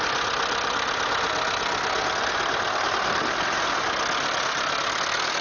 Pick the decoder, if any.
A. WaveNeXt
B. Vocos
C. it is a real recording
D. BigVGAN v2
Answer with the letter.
C